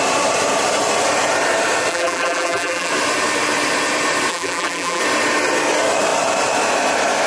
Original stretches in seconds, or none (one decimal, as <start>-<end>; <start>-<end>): 0.0-1.9; 2.9-4.3; 5.0-7.3